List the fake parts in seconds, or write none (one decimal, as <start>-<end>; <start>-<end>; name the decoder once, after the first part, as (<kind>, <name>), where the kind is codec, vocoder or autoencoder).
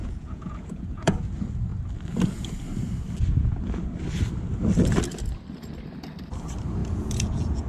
0.0-1.2 (vocoder, Vocos); 6.8-7.7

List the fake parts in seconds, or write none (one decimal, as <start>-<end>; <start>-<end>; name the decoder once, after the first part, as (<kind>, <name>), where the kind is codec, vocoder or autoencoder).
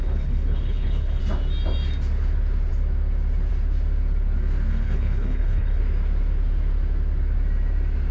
0.0-1.2 (codec, HILCodec); 4.7-5.8